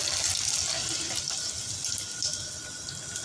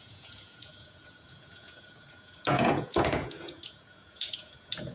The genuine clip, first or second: first